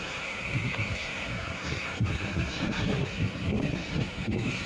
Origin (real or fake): fake